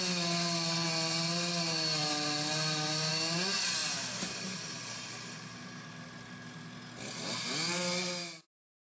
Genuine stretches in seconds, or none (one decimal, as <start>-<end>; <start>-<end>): 0.0-8.9